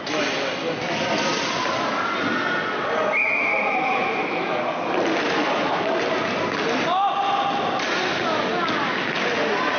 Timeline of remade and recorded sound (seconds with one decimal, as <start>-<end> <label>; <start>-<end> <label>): 0.0-3.4 recorded; 3.4-4.6 remade; 4.6-9.8 recorded